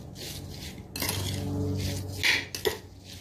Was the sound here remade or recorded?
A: recorded